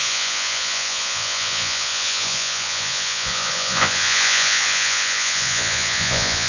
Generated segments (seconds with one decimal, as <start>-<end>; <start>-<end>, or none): 0.0-6.5